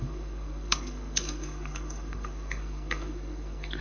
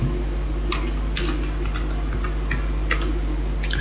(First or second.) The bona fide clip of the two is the second